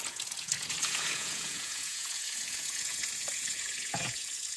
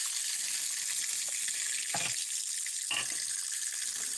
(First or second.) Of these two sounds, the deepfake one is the first